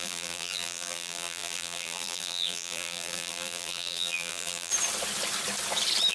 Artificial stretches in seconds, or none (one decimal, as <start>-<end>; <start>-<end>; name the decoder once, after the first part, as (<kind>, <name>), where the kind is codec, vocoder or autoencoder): 0.0-4.7 (vocoder, BigVGAN v2)